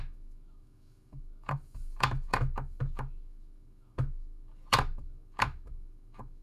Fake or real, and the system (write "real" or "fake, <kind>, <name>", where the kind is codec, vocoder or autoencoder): fake, autoencoder, DAC-VAE